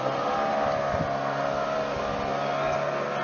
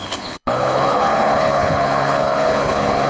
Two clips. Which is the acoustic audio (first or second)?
first